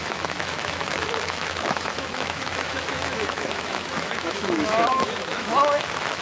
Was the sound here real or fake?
fake